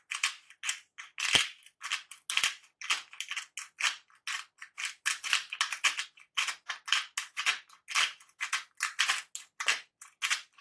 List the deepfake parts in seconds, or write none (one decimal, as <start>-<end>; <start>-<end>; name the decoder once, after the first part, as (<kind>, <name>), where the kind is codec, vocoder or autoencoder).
none